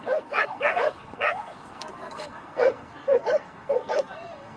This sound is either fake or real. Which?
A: fake